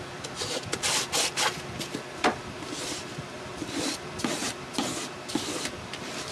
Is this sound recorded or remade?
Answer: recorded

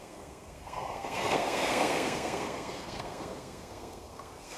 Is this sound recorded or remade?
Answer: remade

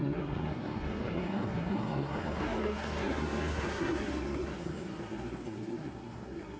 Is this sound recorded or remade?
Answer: remade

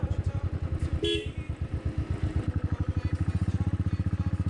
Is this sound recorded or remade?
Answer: recorded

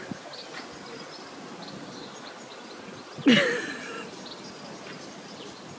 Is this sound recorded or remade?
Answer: recorded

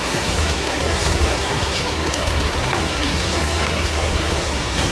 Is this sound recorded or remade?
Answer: remade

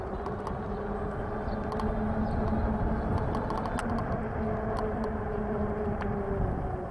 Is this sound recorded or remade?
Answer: recorded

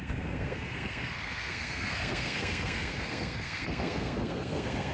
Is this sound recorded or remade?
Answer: remade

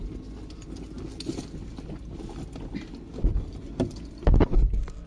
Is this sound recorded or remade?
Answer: recorded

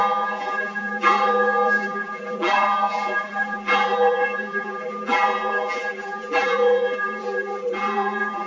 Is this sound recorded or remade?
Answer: remade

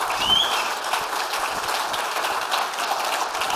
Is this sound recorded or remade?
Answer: recorded